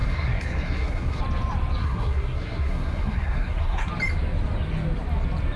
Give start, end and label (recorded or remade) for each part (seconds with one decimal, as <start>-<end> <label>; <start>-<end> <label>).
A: 0.0-1.2 remade; 1.2-1.8 recorded; 1.8-3.9 remade; 3.9-5.6 recorded